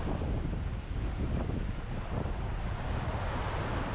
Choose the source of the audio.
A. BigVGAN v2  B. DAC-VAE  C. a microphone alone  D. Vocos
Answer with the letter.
C